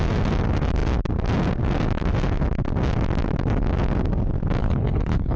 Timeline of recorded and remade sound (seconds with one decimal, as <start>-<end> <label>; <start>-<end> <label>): 0.0-4.6 recorded; 4.6-5.4 remade